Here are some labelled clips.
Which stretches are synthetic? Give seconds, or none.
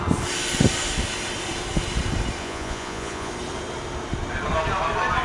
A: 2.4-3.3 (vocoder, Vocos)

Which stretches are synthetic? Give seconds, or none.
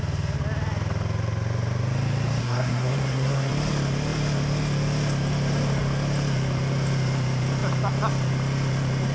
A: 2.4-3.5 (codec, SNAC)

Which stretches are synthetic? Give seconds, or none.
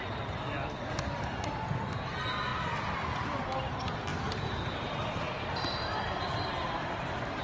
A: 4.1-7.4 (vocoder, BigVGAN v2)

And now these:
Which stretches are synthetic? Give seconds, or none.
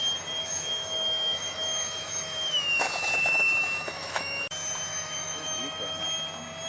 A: 0.4-4.4 (autoencoder, DAC-VAE); 4.9-6.0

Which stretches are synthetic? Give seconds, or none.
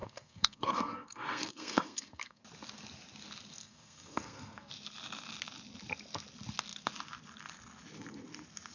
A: 0.0-2.4 (codec, SNAC); 3.6-4.7